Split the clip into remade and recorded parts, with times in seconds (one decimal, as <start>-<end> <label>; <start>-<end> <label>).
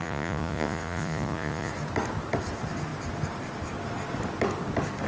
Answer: 0.0-1.7 remade; 1.7-5.1 recorded